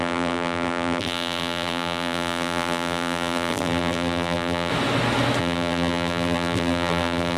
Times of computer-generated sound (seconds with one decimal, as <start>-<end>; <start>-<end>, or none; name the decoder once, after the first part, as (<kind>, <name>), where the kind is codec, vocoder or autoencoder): 0.0-4.7 (vocoder, BigVGAN v2); 5.4-7.4